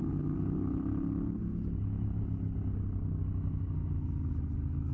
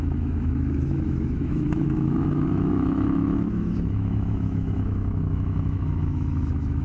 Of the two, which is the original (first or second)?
first